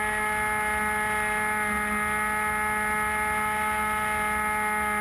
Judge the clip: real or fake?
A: real